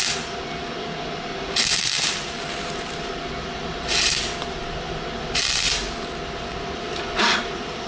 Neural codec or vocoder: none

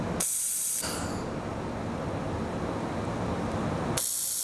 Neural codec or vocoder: none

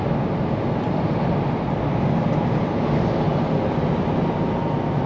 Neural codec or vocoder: none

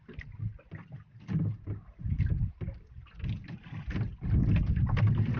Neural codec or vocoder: none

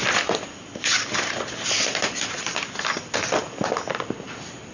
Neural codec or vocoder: none